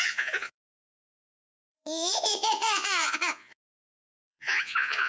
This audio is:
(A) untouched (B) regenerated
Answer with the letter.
B